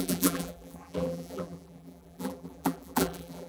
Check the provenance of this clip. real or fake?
fake